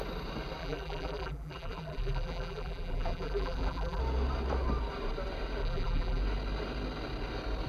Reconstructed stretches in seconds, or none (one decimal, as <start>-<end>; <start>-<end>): 0.6-4.0; 5.6-6.2